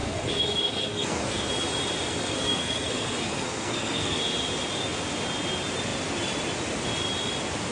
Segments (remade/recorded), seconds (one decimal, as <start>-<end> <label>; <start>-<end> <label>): 0.0-1.5 remade; 1.5-2.1 recorded; 2.1-4.2 remade; 4.2-7.7 recorded